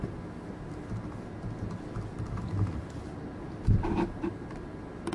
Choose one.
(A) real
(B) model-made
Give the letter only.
A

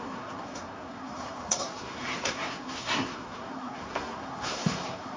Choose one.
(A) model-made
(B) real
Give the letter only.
A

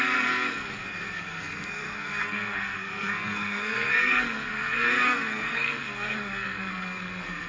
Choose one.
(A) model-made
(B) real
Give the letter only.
A